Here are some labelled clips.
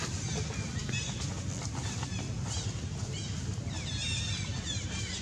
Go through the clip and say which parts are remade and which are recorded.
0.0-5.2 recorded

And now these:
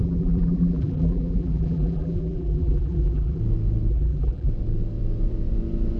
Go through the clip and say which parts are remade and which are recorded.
0.0-3.4 remade; 3.4-3.9 recorded; 3.9-4.5 remade; 4.5-6.0 recorded

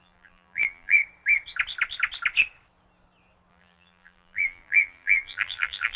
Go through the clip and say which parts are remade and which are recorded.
0.0-1.0 remade; 1.0-3.5 recorded; 3.5-6.0 remade

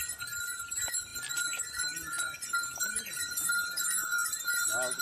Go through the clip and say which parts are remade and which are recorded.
0.0-4.2 remade; 4.2-5.0 recorded

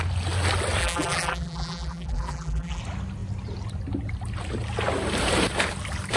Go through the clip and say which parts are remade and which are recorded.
0.0-0.8 recorded; 0.8-2.8 remade; 2.8-6.2 recorded

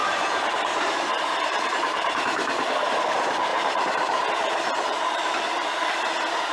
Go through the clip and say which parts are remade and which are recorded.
0.0-2.7 remade; 2.7-3.5 recorded; 3.5-4.2 remade; 4.2-4.9 recorded; 4.9-5.8 remade; 5.8-6.5 recorded